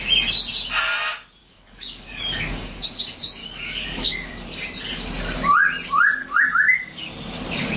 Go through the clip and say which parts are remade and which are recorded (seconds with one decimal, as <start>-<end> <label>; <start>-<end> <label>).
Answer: 0.0-1.4 recorded; 1.4-2.9 remade; 2.9-3.4 recorded; 3.4-4.3 remade; 4.3-6.2 recorded; 6.2-7.1 remade; 7.1-7.8 recorded